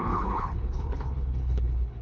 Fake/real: fake